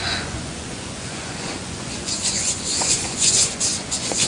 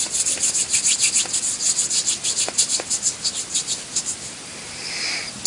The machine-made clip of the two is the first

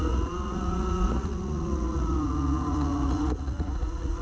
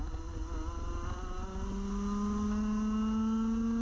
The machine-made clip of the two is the first